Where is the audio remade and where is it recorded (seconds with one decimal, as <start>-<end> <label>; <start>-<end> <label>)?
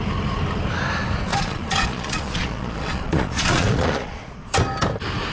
0.0-1.3 recorded; 1.3-4.5 remade; 4.5-5.3 recorded